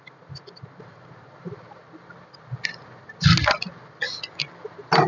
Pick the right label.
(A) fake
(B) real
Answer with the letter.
B